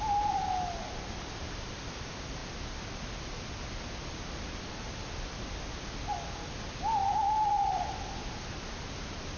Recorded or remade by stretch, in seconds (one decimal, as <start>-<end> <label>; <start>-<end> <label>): 0.0-9.4 recorded